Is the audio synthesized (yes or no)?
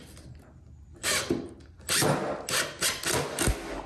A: no